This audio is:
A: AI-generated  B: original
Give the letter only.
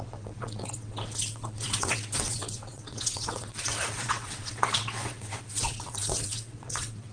A